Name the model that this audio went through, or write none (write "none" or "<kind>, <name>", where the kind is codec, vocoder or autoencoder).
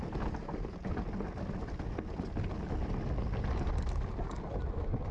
none